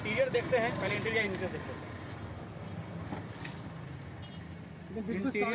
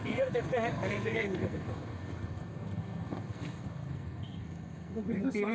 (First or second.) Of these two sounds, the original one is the first